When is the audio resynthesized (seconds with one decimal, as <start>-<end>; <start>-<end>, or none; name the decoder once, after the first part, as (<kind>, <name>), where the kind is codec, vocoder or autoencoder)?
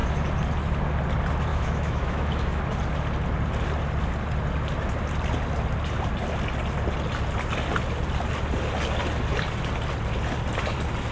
1.5-2.6 (autoencoder, DAC-VAE)